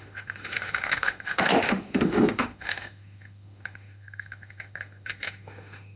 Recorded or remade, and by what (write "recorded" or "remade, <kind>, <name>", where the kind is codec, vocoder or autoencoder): remade, autoencoder, DAC-VAE